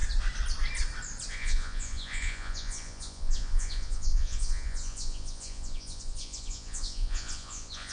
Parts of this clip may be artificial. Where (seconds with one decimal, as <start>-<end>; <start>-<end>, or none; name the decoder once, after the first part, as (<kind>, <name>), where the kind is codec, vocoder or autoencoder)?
1.3-7.9 (vocoder, Vocos)